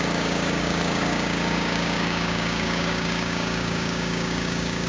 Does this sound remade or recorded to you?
remade